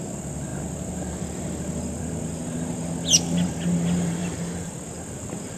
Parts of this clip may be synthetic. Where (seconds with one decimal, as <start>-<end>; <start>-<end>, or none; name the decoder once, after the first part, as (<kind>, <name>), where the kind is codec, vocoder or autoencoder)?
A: 4.2-4.7 (vocoder, BigVGAN v2)